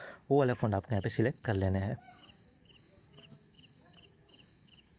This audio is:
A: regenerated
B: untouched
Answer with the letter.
A